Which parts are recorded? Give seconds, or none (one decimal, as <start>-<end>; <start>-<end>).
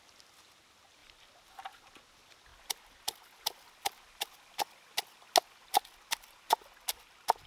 0.0-7.5